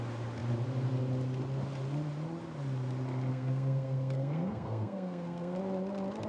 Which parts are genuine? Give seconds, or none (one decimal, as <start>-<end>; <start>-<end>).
0.0-3.3; 5.6-6.3